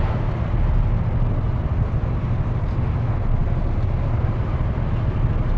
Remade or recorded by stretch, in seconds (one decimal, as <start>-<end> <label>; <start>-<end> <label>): 0.0-5.6 recorded